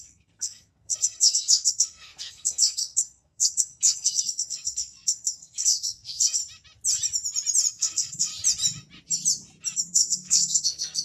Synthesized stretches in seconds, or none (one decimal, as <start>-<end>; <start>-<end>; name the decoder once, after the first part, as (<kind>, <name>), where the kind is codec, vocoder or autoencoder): 0.0-6.4 (codec, SNAC); 7.7-8.3; 9.9-11.0